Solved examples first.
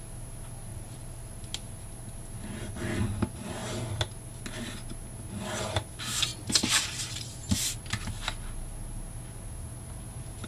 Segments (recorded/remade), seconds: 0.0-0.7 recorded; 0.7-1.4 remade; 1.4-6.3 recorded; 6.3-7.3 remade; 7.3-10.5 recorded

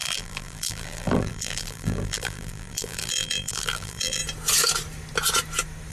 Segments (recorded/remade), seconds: 0.0-4.2 remade; 4.2-5.9 recorded

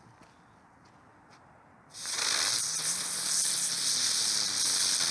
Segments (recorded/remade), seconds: 0.0-1.1 recorded; 1.1-4.2 remade; 4.2-5.1 recorded

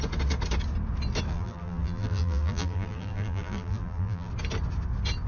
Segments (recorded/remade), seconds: 0.0-1.3 recorded; 1.3-4.3 remade; 4.3-5.3 recorded

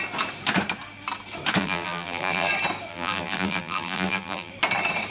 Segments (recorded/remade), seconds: 0.0-1.6 recorded; 1.6-2.5 remade; 2.5-2.9 recorded; 2.9-4.5 remade; 4.5-5.1 recorded

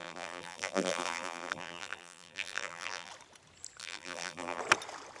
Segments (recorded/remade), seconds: 0.0-3.1 remade; 3.1-3.8 recorded; 3.8-4.6 remade; 4.6-5.2 recorded